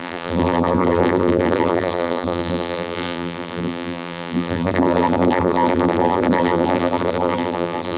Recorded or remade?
remade